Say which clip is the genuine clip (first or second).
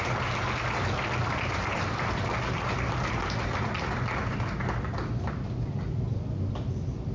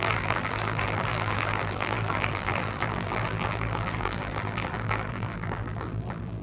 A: first